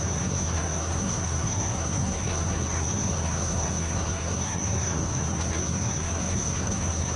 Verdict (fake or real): fake